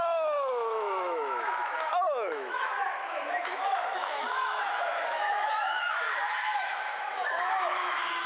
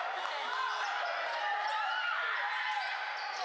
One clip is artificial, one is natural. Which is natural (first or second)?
second